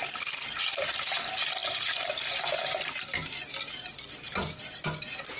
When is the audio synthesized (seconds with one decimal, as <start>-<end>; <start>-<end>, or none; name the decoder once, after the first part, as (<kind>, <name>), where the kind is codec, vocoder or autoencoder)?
none